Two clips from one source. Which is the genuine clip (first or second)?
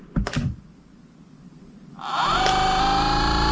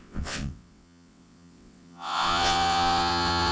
first